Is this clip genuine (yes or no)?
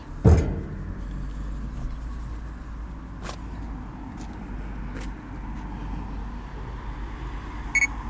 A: yes